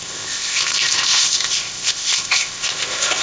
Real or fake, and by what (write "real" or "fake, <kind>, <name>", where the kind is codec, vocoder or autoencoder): fake, codec, ZipCodec